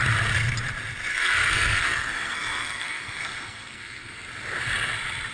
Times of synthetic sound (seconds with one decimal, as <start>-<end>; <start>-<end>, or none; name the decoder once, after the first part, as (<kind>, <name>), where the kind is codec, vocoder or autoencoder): 1.1-4.3 (codec, SNAC)